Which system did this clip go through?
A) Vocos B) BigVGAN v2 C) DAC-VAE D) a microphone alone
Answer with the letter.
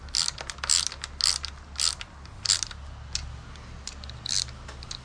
D